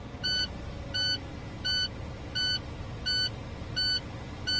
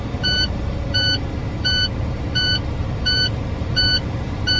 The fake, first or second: second